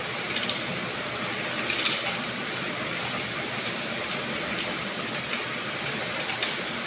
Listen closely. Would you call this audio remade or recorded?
recorded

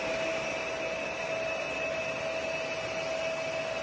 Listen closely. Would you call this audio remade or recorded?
recorded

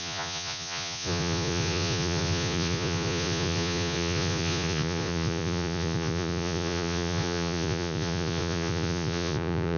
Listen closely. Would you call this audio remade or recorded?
remade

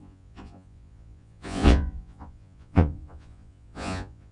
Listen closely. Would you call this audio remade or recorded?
remade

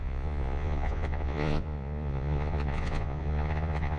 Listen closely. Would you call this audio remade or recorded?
remade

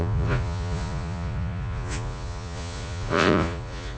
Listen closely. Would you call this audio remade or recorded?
remade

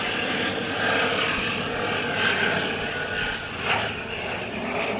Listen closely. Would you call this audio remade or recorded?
recorded